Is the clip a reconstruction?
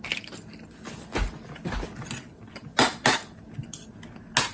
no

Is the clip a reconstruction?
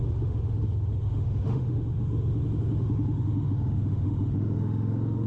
yes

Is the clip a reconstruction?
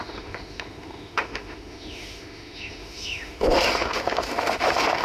yes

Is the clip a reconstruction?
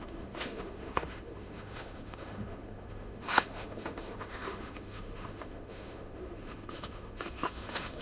yes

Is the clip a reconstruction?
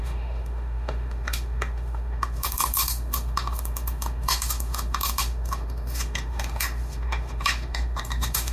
yes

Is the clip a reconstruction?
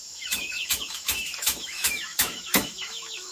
yes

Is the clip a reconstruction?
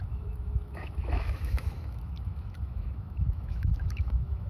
yes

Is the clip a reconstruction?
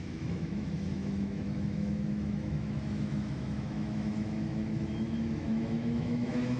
yes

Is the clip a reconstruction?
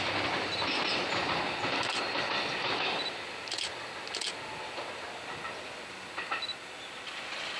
no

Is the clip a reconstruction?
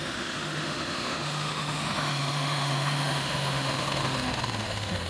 yes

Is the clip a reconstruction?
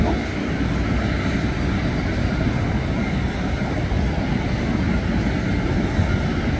no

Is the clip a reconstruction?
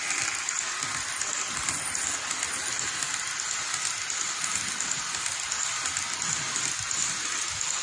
no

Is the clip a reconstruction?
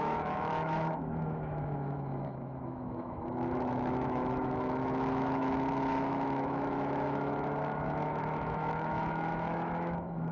yes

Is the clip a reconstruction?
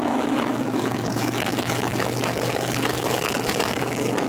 yes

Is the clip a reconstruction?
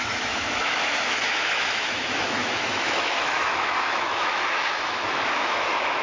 yes